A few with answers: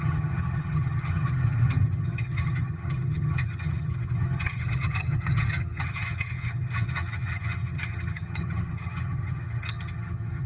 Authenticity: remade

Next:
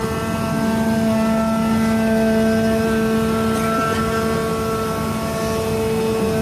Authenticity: recorded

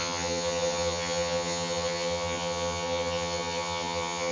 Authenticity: remade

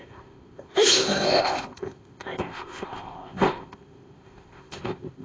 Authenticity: remade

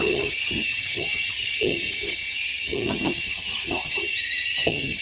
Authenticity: remade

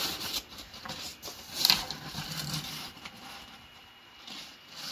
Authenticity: recorded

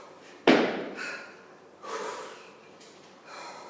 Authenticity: remade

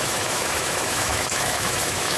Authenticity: remade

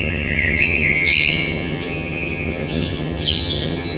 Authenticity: remade